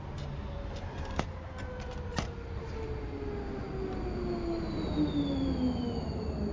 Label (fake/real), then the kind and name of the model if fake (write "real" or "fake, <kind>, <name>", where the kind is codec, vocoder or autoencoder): real